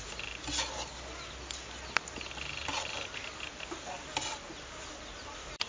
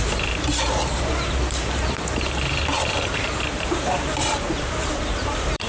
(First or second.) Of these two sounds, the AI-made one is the second